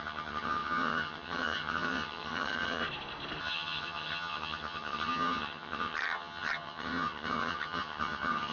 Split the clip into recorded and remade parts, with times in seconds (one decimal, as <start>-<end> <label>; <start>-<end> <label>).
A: 0.0-2.8 remade; 2.8-3.4 recorded; 3.4-8.5 remade